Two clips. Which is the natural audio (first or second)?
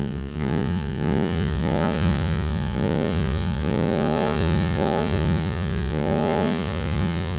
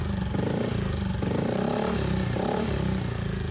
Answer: second